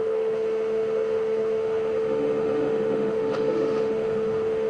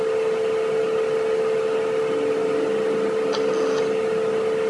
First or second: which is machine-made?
first